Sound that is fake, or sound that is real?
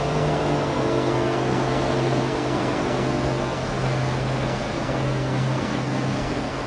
fake